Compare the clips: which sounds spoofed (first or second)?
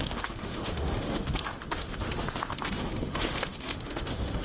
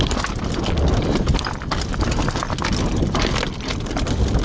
first